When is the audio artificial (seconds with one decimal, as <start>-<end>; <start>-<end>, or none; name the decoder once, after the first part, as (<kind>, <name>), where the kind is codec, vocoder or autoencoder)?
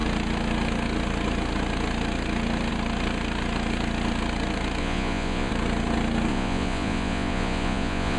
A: 4.8-5.5 (vocoder, Vocos); 6.3-8.2